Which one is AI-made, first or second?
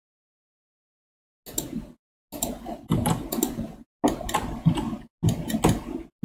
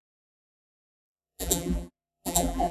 second